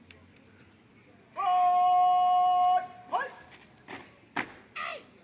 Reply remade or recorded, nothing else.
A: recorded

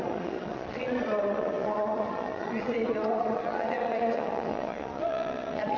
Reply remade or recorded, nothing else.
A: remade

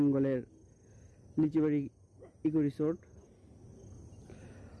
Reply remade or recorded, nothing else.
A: recorded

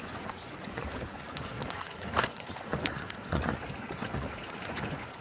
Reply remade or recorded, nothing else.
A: remade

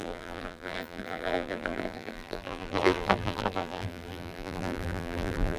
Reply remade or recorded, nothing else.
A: remade